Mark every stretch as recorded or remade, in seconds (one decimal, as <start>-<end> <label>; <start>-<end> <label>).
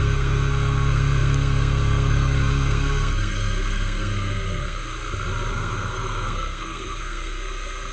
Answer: 0.0-4.9 remade; 4.9-5.5 recorded; 5.5-7.9 remade